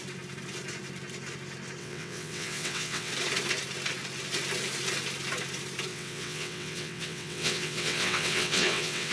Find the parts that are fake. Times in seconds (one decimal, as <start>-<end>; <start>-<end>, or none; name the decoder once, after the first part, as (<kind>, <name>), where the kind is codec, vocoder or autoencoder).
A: 1.8-3.1 (vocoder, WaveNeXt); 5.9-9.1